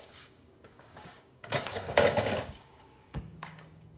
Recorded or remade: remade